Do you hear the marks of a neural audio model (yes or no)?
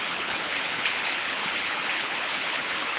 yes